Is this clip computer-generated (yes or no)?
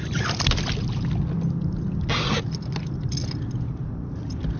no